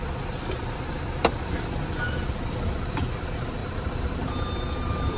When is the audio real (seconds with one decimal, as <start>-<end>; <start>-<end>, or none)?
0.0-3.6; 4.4-5.2